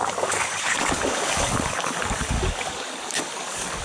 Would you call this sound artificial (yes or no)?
yes